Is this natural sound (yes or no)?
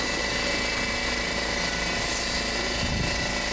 yes